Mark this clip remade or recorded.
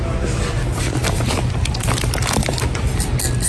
recorded